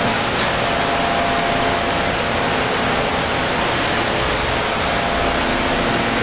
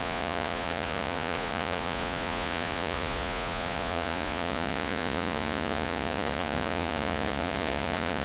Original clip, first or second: first